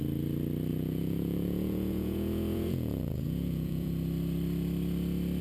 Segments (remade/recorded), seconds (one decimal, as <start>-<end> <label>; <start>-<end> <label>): 0.0-0.7 recorded; 0.7-3.9 remade; 3.9-5.4 recorded